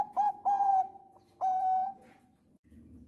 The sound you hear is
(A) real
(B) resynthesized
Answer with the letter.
B